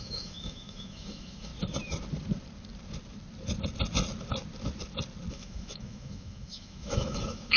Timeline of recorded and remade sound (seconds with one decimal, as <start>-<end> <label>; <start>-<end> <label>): 0.0-1.5 remade; 1.5-5.3 recorded; 5.3-7.6 remade